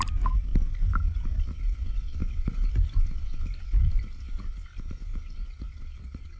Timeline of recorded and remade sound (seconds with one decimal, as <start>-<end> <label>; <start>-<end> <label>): 0.0-6.4 recorded